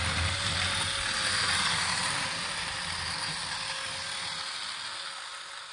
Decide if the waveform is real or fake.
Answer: real